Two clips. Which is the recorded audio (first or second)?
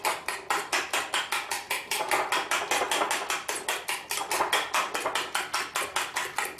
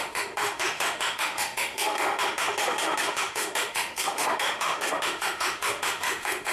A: first